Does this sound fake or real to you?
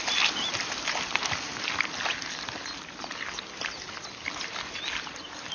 real